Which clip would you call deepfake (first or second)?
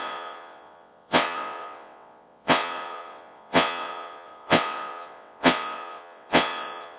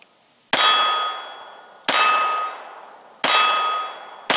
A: first